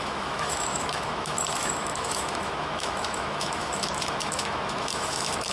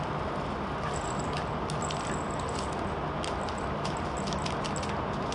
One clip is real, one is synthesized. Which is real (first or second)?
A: second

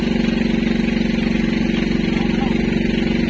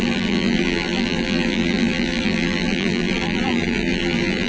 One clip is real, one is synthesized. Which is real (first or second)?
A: first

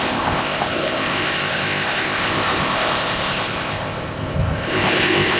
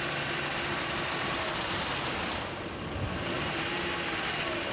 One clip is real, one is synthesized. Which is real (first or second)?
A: second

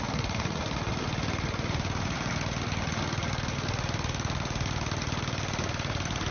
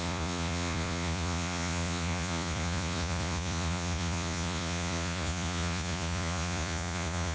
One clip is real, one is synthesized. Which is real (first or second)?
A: first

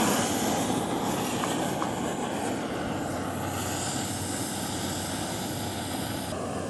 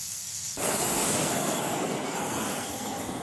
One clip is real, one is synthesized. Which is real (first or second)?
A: first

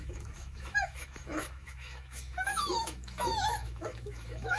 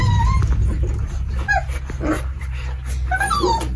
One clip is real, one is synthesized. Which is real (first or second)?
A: second